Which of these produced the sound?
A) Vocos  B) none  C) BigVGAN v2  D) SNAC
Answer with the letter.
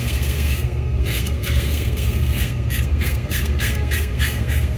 D